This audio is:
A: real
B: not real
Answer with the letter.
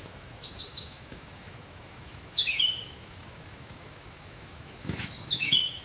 B